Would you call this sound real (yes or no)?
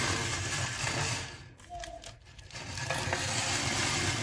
yes